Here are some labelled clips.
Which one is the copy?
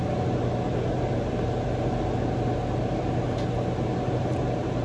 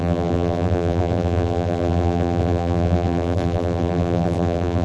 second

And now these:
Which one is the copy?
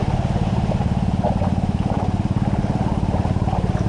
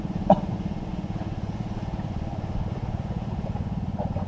second